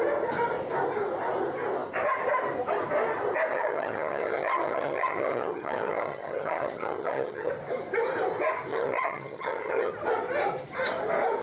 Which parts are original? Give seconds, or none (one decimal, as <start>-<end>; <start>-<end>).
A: 0.0-3.5; 7.5-8.7; 9.9-11.4